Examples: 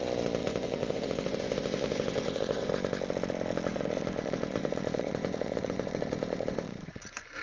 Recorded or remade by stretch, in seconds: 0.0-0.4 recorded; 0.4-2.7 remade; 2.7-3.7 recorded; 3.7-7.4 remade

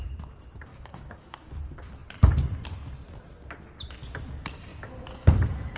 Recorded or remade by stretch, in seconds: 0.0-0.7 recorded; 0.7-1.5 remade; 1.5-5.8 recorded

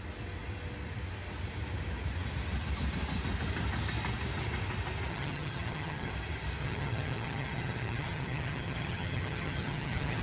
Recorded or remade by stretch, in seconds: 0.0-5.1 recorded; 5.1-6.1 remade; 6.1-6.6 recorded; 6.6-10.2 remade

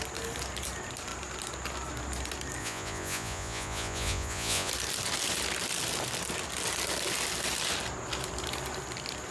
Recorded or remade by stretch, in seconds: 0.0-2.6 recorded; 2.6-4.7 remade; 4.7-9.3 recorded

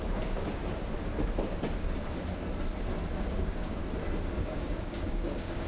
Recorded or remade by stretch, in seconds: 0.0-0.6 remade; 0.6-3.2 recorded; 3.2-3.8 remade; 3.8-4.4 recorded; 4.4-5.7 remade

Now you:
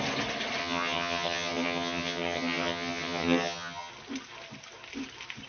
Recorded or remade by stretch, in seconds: 0.0-0.6 recorded; 0.6-3.9 remade; 3.9-5.5 recorded